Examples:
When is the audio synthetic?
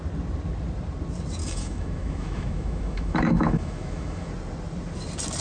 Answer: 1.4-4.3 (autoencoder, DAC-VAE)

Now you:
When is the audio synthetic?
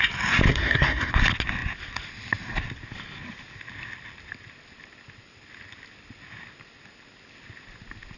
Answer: 0.5-1.1 (codec, SNAC)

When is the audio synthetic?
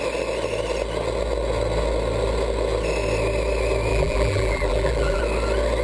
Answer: 3.9-5.2 (vocoder, BigVGAN v2)